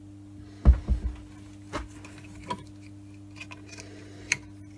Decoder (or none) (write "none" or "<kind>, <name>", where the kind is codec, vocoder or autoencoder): none